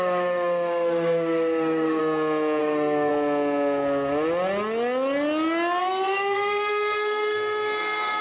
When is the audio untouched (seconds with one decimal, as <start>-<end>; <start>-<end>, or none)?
2.0-2.6; 3.1-5.8